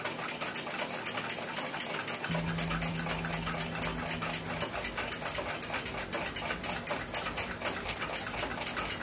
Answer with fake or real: real